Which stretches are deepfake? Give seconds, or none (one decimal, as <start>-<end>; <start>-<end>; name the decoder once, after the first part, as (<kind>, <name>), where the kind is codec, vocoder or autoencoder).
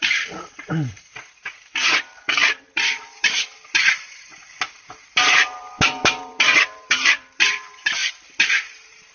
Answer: 0.0-4.4 (vocoder, BigVGAN v2); 4.9-8.0; 8.6-9.1